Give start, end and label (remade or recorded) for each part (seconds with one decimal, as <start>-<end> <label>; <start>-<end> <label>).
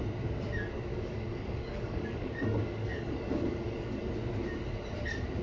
0.0-0.9 recorded; 0.9-4.1 remade; 4.1-5.4 recorded